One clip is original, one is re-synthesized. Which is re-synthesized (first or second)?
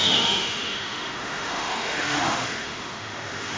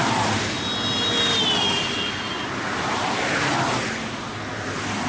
first